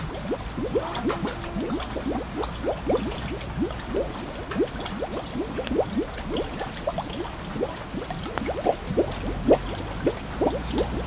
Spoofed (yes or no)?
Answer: no